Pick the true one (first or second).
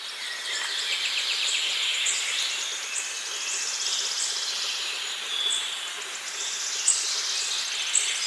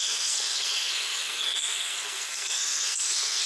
first